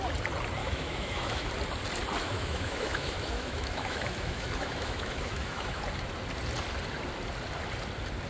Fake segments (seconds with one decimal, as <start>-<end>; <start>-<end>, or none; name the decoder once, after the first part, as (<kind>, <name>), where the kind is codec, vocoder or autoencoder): 0.6-1.5 (autoencoder, DAC-VAE); 2.2-5.8